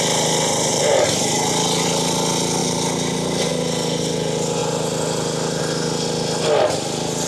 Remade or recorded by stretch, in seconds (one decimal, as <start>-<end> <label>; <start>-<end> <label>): 0.0-0.7 recorded; 0.7-1.5 remade; 1.5-2.6 recorded; 2.6-3.5 remade; 3.5-7.3 recorded